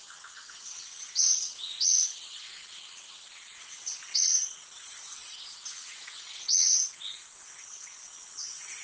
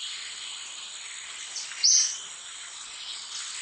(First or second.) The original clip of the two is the second